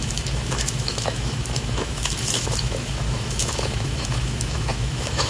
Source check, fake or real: fake